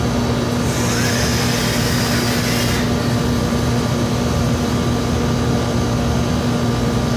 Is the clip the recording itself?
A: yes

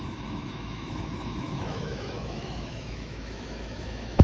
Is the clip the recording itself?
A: no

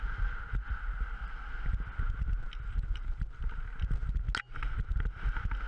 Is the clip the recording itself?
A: yes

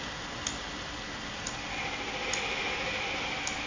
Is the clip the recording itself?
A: yes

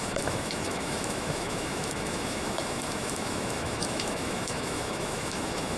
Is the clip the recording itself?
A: no